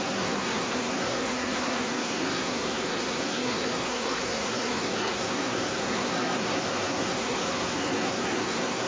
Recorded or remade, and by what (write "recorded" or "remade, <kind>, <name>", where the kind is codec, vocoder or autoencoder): remade, codec, SNAC